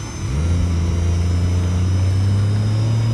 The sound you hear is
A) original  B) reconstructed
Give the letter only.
A